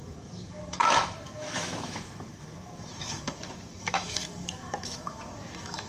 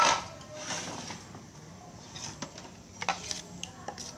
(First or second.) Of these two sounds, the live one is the second